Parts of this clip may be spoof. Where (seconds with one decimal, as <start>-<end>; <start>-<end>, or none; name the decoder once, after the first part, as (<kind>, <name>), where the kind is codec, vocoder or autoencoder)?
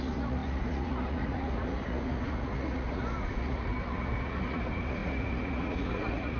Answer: 0.0-6.4 (vocoder, Vocos)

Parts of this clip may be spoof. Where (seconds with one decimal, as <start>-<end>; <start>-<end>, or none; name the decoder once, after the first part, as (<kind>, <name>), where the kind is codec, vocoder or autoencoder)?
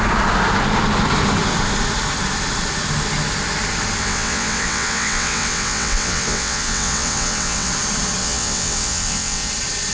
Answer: 4.0-7.7 (vocoder, WaveNeXt); 8.2-9.5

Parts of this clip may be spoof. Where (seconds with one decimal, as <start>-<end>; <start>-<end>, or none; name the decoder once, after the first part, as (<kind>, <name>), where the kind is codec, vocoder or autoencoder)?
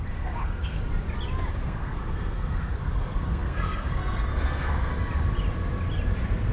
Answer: 0.0-0.8 (codec, SNAC); 1.5-4.9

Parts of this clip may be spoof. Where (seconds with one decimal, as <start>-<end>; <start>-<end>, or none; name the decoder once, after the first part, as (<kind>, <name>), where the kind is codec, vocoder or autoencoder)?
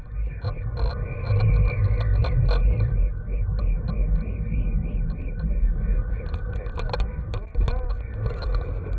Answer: none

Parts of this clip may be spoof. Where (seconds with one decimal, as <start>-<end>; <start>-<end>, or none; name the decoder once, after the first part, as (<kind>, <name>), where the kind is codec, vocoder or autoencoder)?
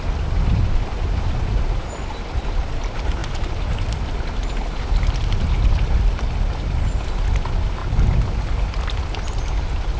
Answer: none